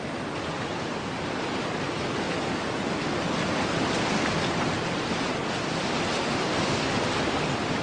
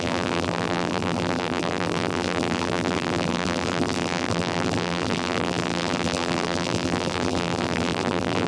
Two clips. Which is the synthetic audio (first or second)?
second